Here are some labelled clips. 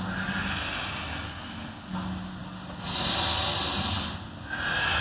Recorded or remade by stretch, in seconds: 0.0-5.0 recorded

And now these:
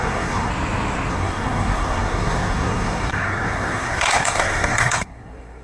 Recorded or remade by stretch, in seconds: 0.0-0.5 remade; 0.5-1.1 recorded; 1.1-5.6 remade

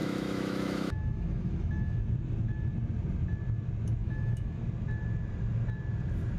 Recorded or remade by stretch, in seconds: 0.0-2.0 remade; 2.0-4.0 recorded; 4.0-4.6 remade; 4.6-6.4 recorded

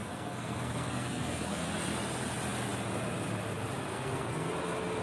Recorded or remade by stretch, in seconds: 0.0-1.6 remade; 1.6-3.9 recorded; 3.9-4.5 remade; 4.5-5.0 recorded

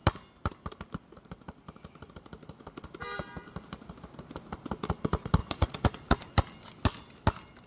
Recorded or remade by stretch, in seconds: 0.0-5.4 recorded; 5.4-6.3 remade; 6.3-7.7 recorded

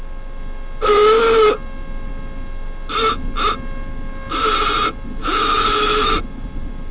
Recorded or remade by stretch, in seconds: 0.0-5.2 recorded; 5.2-6.1 remade; 6.1-6.9 recorded

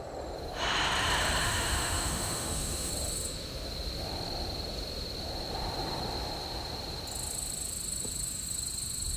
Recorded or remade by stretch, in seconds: 0.0-1.4 recorded; 1.4-2.9 remade; 2.9-9.2 recorded

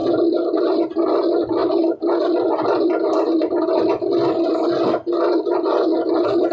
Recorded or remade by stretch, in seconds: 0.0-6.5 recorded